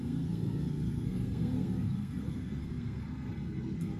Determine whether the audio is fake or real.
fake